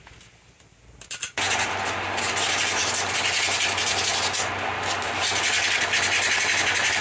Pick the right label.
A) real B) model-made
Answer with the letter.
A